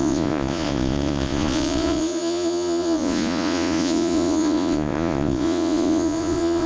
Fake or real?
fake